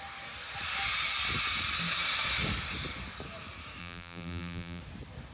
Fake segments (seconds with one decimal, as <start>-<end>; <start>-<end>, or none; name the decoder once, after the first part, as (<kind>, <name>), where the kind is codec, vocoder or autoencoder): 3.8-4.8 (vocoder, BigVGAN v2)